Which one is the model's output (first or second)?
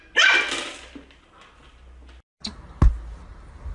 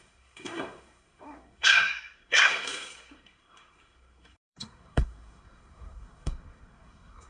second